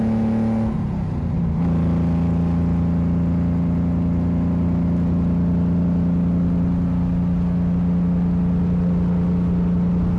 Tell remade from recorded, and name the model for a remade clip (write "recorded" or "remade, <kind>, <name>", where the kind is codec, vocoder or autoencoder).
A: recorded